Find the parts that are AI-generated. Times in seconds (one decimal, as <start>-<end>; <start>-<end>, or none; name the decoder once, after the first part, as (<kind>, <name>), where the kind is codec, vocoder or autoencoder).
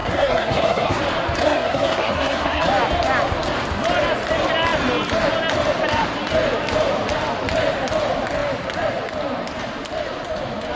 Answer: 0.0-1.0 (codec, SNAC); 1.4-2.6